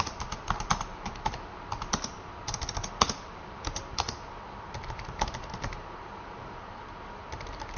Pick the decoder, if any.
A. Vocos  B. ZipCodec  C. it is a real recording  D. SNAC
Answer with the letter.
C